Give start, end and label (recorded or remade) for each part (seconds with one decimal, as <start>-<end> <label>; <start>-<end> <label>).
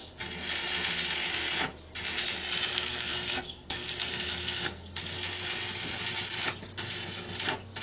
0.0-2.7 recorded; 2.7-5.0 remade; 5.0-7.8 recorded